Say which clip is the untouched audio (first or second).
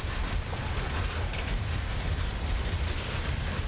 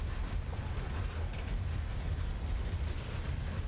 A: second